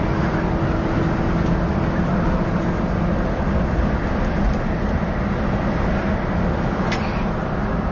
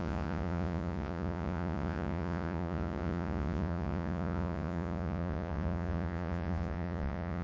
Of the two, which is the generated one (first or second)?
second